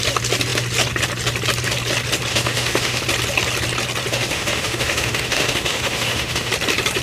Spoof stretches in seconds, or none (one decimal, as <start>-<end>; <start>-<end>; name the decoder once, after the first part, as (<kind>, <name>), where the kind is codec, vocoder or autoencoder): 2.3-3.0 (autoencoder, DAC-VAE); 4.1-6.5